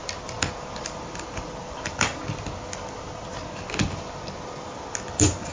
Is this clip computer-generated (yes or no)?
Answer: no